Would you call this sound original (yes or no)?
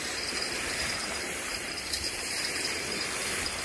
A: no